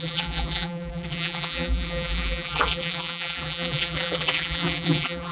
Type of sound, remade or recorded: remade